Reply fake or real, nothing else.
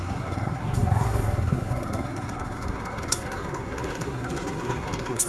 fake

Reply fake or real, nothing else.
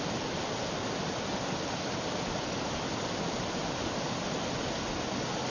real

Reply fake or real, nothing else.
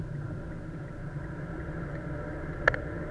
real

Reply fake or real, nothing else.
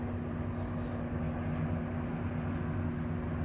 real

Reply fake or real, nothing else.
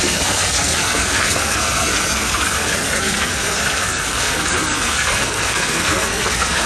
fake